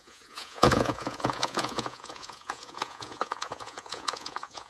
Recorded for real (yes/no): no